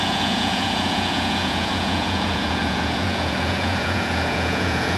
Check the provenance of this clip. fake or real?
fake